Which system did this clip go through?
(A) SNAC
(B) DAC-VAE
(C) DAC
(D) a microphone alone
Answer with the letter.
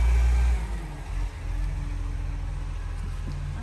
D